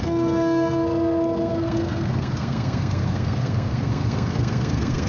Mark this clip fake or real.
fake